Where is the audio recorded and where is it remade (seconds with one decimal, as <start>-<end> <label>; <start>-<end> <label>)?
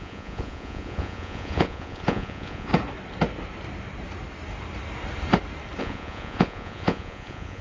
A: 0.0-2.7 remade; 2.7-5.8 recorded; 5.8-7.6 remade